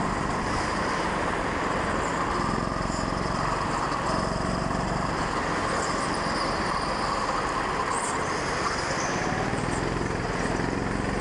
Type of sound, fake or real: real